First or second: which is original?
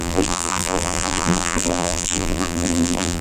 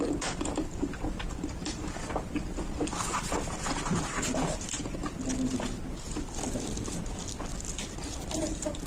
second